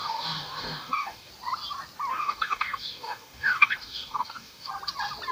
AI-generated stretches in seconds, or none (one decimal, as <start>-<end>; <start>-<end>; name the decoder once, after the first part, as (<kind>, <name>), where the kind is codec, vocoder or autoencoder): 0.0-1.3 (codec, DAC); 2.1-4.7